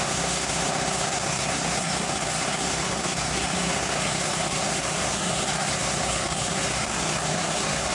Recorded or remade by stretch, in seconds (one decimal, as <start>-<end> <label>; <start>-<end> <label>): 0.0-7.9 remade

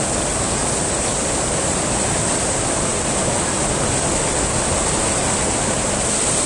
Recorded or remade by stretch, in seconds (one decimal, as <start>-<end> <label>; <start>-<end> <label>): 0.0-6.5 recorded

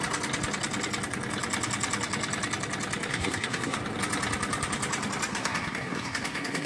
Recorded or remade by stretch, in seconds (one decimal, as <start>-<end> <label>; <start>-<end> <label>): 0.0-3.1 recorded; 3.1-3.8 remade; 3.8-5.3 recorded; 5.3-6.7 remade

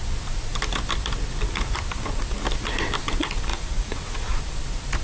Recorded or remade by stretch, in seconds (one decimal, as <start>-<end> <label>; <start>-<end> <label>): 0.0-3.5 recorded; 3.5-4.4 remade; 4.4-5.0 recorded

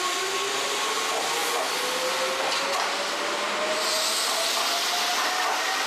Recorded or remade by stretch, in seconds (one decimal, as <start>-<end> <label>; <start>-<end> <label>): 0.0-5.9 recorded

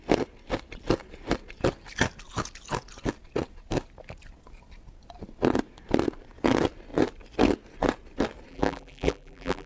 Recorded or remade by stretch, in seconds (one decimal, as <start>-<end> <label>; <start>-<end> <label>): 0.0-8.5 recorded; 8.5-9.7 remade